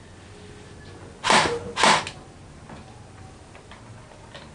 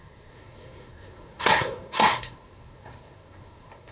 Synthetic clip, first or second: second